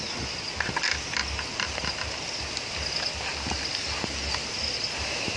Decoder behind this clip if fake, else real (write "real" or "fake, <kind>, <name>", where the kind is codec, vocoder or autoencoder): real